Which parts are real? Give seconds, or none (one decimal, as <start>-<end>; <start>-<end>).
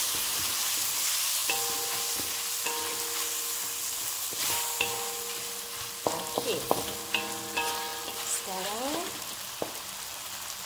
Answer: 0.0-10.7